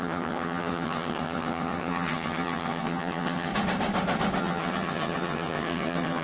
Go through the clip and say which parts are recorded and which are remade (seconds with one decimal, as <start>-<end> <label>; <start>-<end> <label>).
0.0-3.5 remade; 3.5-4.4 recorded; 4.4-6.2 remade